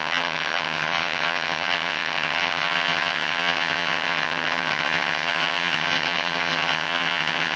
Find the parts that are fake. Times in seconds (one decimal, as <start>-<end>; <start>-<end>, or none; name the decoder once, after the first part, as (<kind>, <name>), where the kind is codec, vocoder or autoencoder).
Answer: 0.0-7.6 (vocoder, HiFi-GAN)